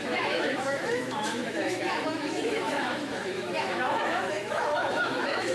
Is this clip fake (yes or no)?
yes